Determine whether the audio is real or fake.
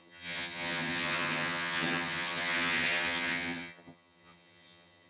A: fake